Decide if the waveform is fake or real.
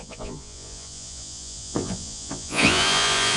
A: fake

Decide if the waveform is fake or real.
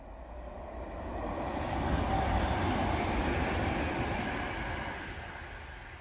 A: real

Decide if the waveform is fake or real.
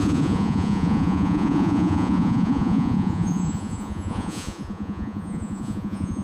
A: fake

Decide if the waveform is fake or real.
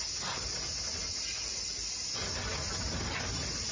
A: real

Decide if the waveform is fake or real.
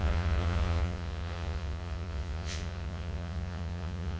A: fake